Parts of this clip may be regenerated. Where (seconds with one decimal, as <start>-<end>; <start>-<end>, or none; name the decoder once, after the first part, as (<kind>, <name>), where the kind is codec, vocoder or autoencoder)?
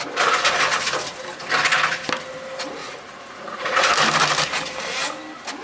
2.8-3.9 (vocoder, Vocos)